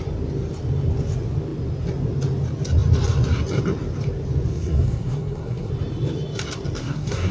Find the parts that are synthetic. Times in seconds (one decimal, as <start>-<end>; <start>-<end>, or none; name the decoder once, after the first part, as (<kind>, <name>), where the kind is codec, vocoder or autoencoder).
4.5-5.7 (codec, SNAC); 6.8-7.3